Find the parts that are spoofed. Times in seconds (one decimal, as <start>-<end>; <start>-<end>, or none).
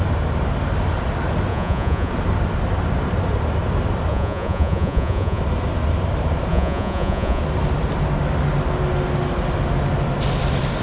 1.5-2.1; 4.1-5.4; 6.5-7.4